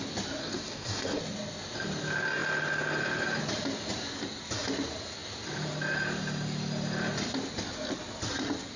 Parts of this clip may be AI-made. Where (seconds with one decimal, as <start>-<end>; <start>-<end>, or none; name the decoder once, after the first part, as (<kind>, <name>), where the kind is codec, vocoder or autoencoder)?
0.4-1.2 (codec, DAC)